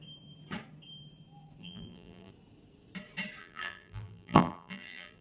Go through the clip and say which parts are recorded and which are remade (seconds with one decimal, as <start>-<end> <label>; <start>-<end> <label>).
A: 0.0-1.6 recorded; 1.6-2.3 remade; 2.3-3.4 recorded; 3.4-5.2 remade